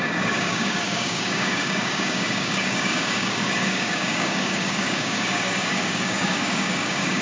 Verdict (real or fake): fake